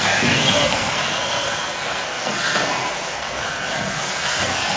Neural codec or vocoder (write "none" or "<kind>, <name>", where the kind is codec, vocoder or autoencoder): codec, SNAC